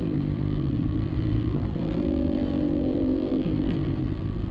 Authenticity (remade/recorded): remade